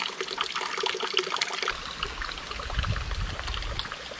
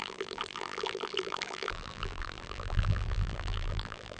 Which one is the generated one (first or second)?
second